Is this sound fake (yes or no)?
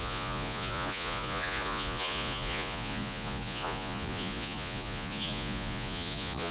yes